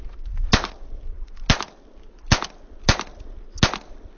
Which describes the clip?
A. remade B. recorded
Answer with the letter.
B